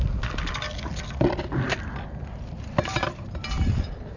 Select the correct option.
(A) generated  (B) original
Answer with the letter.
B